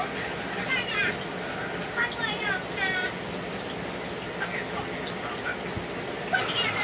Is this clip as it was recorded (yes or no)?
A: yes